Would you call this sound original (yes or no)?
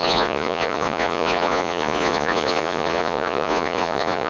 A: no